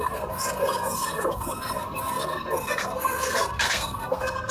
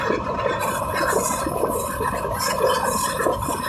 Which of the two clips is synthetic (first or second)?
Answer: first